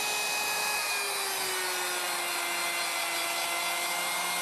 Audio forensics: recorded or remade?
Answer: recorded